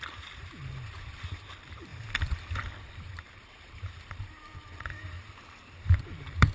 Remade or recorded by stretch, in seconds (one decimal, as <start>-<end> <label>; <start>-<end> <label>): 0.0-1.9 remade; 1.9-2.8 recorded; 2.8-6.5 remade